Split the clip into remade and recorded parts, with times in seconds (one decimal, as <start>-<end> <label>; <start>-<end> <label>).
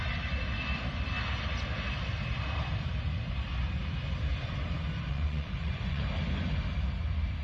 0.0-5.1 recorded; 5.1-6.0 remade; 6.0-7.4 recorded